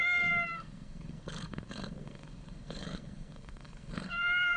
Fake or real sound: fake